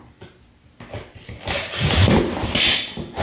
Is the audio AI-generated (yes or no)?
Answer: no